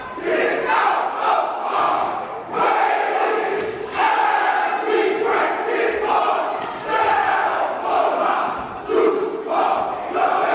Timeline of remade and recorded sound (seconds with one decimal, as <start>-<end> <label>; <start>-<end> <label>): 0.0-1.6 recorded; 1.6-4.5 remade; 4.5-7.2 recorded; 7.2-8.2 remade; 8.2-10.5 recorded